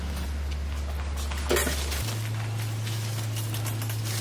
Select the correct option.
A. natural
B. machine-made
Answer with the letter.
A